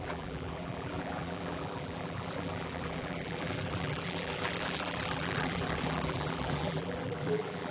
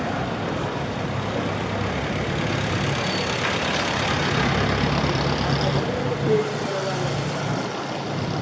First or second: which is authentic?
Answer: second